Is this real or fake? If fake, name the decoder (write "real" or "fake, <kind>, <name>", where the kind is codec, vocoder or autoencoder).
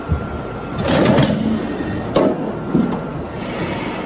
real